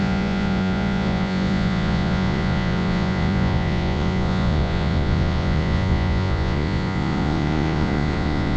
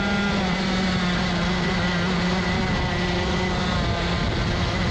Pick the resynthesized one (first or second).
first